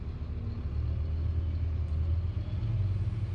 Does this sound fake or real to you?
real